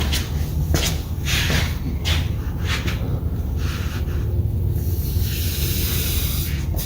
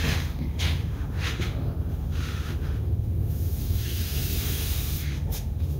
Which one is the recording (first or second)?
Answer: first